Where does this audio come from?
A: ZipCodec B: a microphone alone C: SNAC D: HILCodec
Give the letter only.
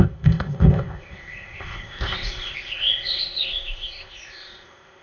A